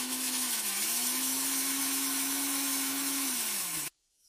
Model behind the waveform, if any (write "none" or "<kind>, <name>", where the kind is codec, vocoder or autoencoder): autoencoder, DAC-VAE